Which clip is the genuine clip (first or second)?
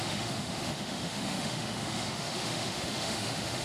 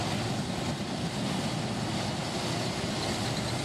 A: second